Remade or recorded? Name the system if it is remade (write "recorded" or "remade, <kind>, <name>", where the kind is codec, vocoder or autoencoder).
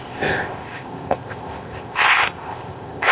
remade, codec, ZipCodec